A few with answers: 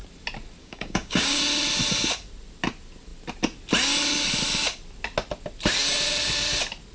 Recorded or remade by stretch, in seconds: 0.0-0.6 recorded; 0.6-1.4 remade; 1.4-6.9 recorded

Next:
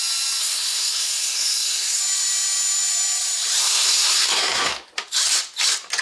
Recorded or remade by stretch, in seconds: 0.0-0.4 recorded; 0.4-2.0 remade; 2.0-3.6 recorded; 3.6-4.7 remade; 4.7-6.0 recorded

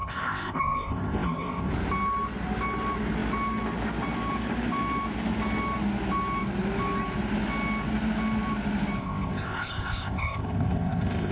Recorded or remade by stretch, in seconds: 0.0-1.7 remade; 1.7-9.0 recorded; 9.0-11.3 remade

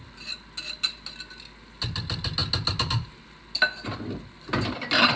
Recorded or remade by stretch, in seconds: 0.0-5.2 recorded

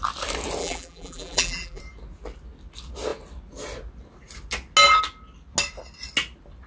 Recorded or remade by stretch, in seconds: 0.0-0.6 recorded; 0.6-1.8 remade; 1.8-6.7 recorded

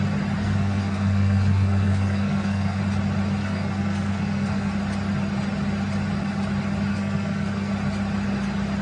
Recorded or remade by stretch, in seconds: 0.0-0.4 recorded; 0.4-2.8 remade; 2.8-3.4 recorded; 3.4-4.7 remade; 4.7-6.9 recorded; 6.9-7.7 remade; 7.7-8.8 recorded

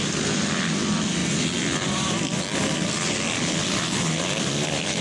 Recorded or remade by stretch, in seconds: 0.0-5.0 recorded

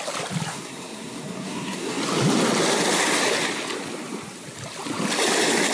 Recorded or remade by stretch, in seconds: 0.0-0.5 recorded; 0.5-2.0 remade; 2.0-5.7 recorded